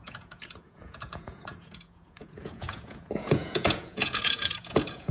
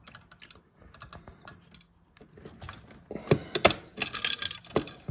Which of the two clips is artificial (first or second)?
first